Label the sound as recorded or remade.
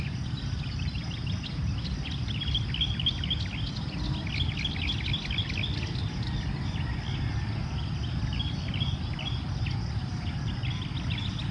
recorded